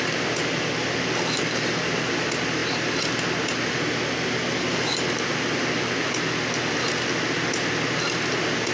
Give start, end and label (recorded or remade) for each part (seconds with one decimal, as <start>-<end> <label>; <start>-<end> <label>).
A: 0.0-8.7 recorded